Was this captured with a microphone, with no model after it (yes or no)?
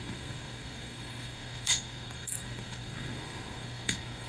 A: no